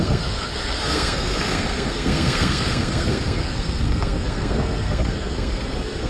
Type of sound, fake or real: fake